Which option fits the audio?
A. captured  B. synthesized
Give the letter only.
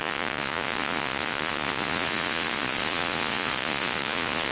B